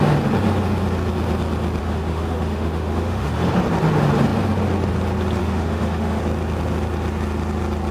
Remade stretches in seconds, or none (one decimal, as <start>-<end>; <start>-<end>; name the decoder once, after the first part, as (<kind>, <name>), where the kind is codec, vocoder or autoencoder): 1.8-3.3 (autoencoder, DAC-VAE); 5.4-6.2